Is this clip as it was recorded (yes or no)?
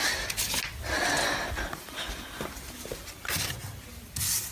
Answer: yes